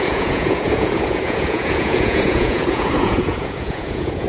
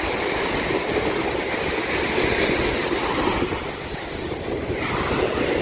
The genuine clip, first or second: second